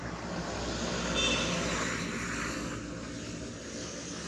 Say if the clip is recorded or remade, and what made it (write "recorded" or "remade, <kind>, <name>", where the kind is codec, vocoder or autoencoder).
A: recorded